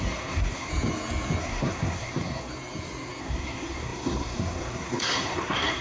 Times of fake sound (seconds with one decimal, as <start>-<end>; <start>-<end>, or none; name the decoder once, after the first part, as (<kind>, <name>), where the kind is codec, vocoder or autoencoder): 0.0-0.7 (codec, SNAC); 1.4-2.5; 3.2-5.8